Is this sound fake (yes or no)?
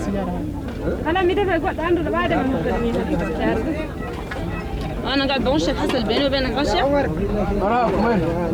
no